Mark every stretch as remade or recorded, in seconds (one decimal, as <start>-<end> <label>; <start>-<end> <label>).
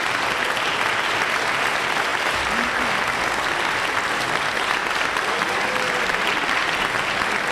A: 0.0-7.5 recorded